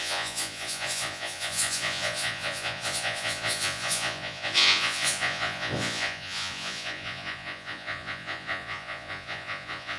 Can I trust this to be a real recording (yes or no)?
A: no